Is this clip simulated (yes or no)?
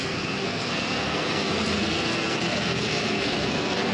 yes